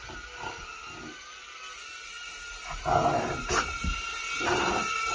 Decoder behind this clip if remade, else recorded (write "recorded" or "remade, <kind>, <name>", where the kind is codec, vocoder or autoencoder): recorded